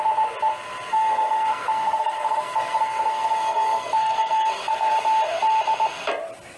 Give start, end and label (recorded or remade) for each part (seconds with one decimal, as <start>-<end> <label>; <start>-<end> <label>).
0.0-0.9 recorded; 0.9-4.9 remade; 4.9-6.6 recorded